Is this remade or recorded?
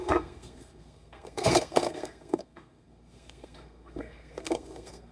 remade